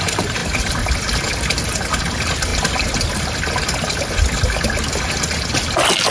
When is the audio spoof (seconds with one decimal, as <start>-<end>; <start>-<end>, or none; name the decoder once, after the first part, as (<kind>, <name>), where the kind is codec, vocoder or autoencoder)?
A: none